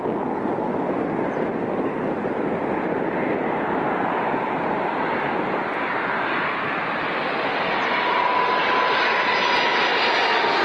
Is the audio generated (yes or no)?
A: no